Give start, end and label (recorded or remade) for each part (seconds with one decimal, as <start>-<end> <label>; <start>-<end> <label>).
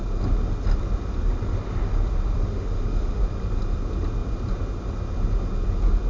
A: 0.0-2.4 recorded; 2.4-3.2 remade; 3.2-6.1 recorded